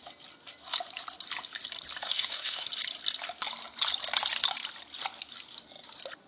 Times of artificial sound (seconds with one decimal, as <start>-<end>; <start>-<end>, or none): 2.0-2.7